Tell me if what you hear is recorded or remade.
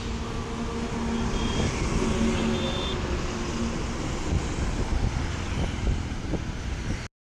recorded